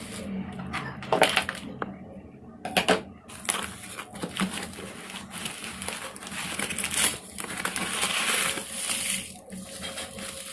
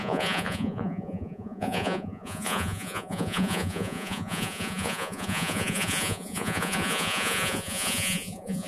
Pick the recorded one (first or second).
first